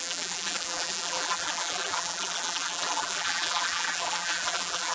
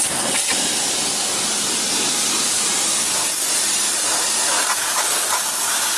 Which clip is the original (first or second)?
second